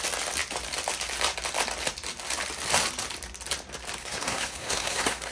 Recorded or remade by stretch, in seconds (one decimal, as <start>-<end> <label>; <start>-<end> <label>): 0.0-4.0 recorded; 4.0-5.3 remade